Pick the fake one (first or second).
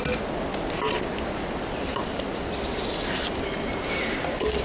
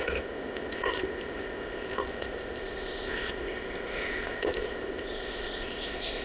second